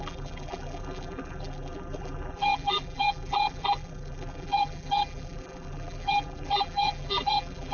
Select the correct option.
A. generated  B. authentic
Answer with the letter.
A